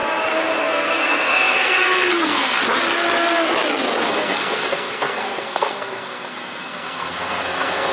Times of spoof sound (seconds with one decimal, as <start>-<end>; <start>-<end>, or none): 0.6-2.6; 4.1-7.9